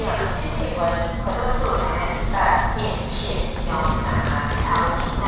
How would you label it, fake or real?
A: real